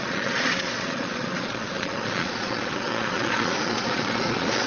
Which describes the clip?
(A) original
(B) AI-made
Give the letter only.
B